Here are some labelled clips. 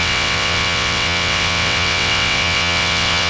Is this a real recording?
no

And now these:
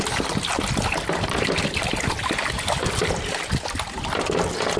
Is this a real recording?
yes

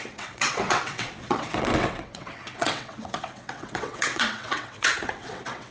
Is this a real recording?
no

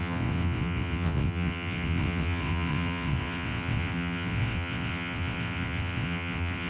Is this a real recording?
no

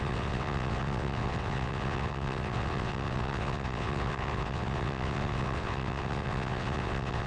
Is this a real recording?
no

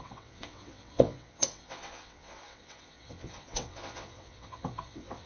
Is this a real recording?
no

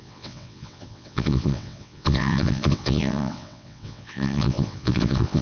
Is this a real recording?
no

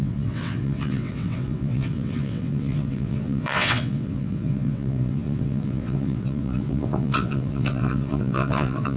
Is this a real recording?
no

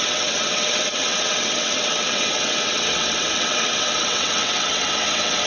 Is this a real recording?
no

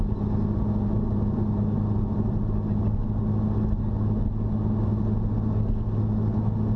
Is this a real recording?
yes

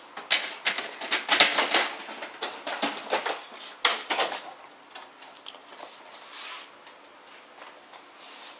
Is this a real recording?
yes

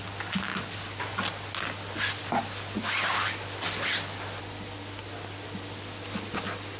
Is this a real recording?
yes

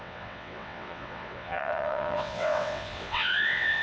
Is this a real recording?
no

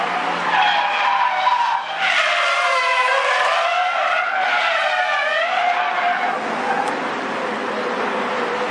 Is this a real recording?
yes